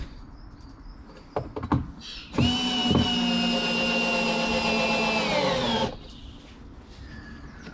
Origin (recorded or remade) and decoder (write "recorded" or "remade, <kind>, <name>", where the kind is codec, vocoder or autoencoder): recorded